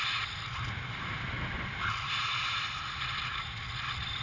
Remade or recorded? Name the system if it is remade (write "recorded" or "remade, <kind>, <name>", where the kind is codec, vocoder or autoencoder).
recorded